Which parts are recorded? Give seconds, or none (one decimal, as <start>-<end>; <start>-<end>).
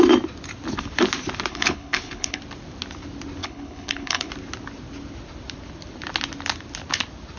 0.0-1.5; 2.4-3.4; 4.3-7.4